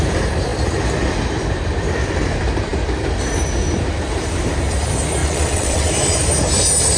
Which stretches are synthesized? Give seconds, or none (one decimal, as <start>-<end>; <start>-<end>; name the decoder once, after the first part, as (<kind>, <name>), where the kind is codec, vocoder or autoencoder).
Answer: 5.2-5.9 (vocoder, WaveNeXt)

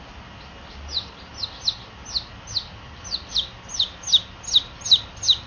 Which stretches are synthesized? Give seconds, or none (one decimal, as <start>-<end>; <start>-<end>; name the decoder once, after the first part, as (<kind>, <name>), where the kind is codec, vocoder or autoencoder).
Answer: none

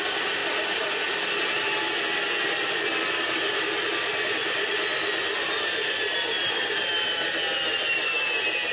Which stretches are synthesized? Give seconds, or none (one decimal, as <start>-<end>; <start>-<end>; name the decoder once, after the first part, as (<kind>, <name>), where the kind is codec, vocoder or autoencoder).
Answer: none

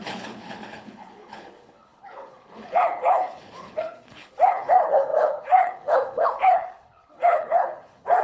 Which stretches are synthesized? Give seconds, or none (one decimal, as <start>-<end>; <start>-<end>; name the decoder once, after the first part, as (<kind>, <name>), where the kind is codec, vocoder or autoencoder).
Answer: 0.0-8.2 (codec, HILCodec)

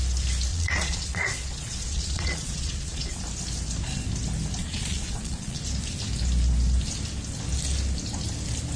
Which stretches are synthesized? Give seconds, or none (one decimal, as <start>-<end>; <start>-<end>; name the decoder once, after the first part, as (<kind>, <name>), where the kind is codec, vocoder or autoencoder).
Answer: 0.5-3.2 (vocoder, Vocos); 4.6-5.6